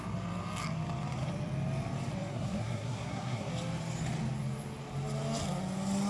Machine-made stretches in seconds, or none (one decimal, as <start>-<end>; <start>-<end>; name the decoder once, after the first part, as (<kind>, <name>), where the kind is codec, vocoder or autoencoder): 2.3-3.5 (codec, SNAC)